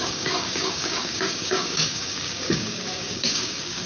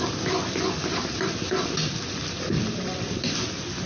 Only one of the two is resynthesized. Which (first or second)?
first